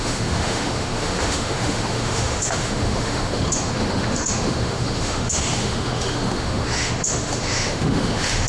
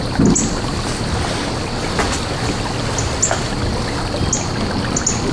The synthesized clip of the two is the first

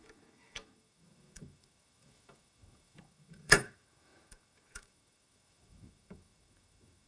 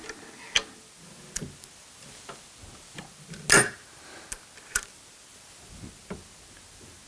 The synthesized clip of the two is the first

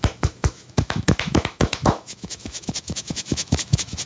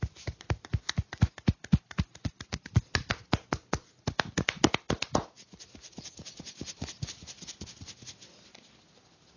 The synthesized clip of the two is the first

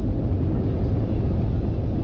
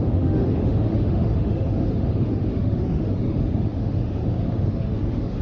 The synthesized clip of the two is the second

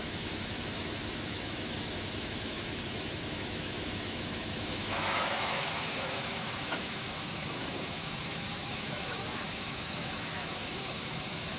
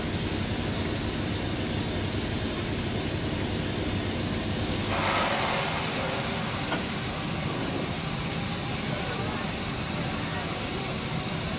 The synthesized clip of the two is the first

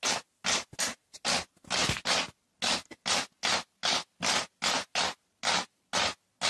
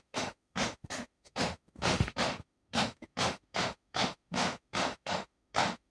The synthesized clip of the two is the second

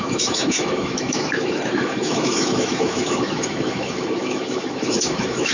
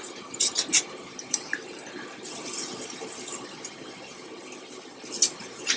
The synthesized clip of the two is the first